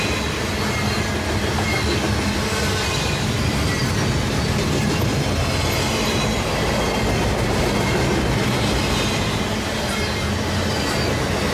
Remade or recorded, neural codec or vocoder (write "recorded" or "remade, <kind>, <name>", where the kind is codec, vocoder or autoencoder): recorded